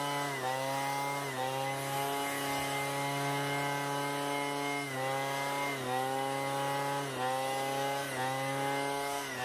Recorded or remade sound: recorded